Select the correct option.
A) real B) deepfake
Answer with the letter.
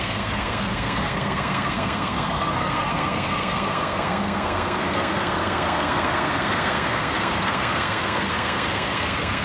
B